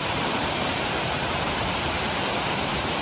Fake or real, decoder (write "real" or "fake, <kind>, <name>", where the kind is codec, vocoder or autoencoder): fake, vocoder, BigVGAN v2